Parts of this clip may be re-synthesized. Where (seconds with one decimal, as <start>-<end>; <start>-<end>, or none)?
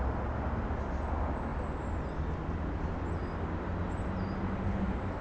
none